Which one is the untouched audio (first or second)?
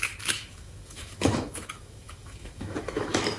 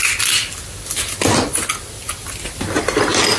second